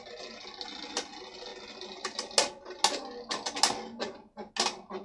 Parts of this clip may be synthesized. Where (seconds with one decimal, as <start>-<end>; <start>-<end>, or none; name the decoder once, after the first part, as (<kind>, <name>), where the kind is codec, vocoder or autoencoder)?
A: none